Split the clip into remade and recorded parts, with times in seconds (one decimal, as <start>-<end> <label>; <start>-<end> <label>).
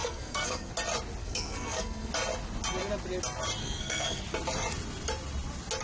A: 0.0-0.7 remade; 0.7-1.2 recorded; 1.2-2.1 remade; 2.1-3.6 recorded; 3.6-4.2 remade; 4.2-5.8 recorded